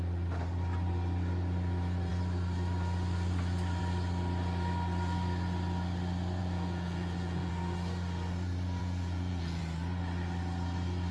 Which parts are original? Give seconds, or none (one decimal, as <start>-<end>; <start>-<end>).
0.0-6.4; 7.5-8.8; 9.6-11.1

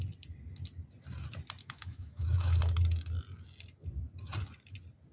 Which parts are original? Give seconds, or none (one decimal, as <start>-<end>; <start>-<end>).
0.0-1.6; 2.6-5.1